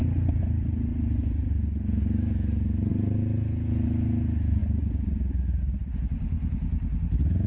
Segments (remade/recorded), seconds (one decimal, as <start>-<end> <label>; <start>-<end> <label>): 0.0-7.5 recorded